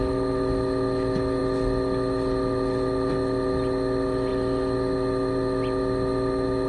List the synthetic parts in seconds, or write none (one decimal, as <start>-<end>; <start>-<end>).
none